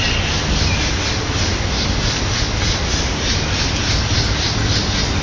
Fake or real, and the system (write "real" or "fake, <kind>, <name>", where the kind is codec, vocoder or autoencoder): real